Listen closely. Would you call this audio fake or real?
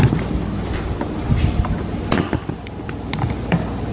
real